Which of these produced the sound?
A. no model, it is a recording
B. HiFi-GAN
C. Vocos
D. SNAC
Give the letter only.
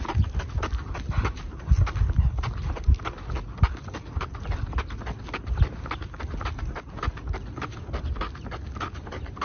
A